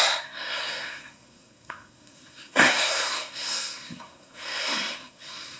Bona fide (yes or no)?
no